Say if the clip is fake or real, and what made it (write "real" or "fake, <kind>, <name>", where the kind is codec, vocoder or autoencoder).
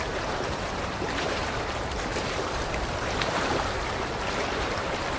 fake, vocoder, BigVGAN v2